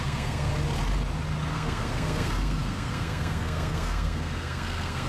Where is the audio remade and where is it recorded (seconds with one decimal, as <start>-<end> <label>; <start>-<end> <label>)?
0.0-0.5 remade; 0.5-1.5 recorded; 1.5-5.1 remade